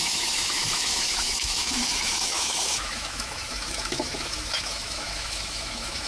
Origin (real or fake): fake